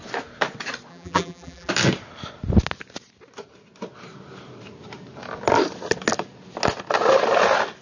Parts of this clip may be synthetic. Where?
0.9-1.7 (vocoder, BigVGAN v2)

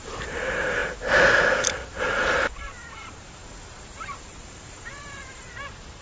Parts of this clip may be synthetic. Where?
0.0-0.8 (vocoder, BigVGAN v2); 2.0-3.4; 4.3-6.0

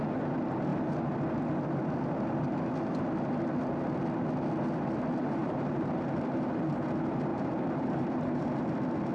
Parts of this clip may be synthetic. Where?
5.4-6.0 (vocoder, BigVGAN v2); 7.3-8.6

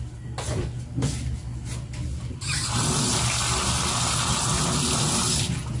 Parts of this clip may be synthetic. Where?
none

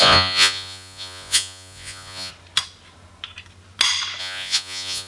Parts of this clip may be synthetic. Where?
0.0-2.3 (vocoder, Vocos); 4.2-5.1

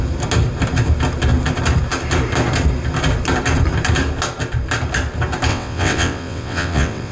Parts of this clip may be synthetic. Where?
5.5-7.1 (vocoder, WaveNeXt)